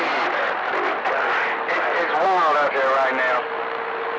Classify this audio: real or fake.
real